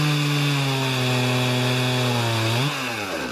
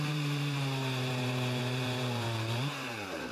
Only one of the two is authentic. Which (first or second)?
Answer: first